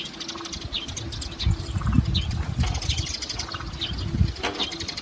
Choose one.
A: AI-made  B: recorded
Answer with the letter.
B